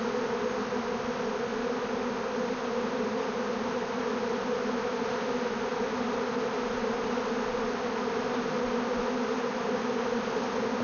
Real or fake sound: real